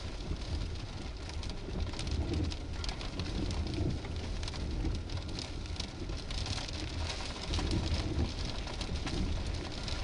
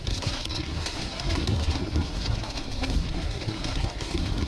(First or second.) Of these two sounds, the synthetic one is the second